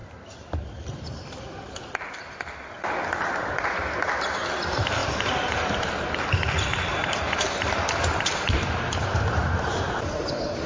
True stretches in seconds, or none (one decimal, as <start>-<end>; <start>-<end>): 0.7-3.4; 4.4-5.0; 6.2-6.9